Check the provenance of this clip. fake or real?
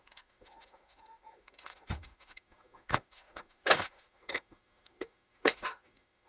fake